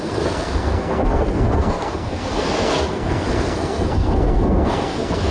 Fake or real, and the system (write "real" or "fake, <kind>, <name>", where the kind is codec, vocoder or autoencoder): fake, codec, SNAC